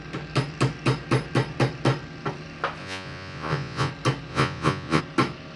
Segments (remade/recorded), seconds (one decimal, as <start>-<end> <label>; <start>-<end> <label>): 0.0-2.8 recorded; 2.8-3.9 remade; 3.9-4.3 recorded; 4.3-5.0 remade; 5.0-5.6 recorded